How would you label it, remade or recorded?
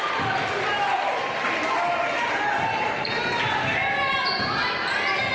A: recorded